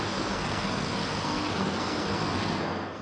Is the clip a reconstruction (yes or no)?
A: yes